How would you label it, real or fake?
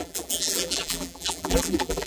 fake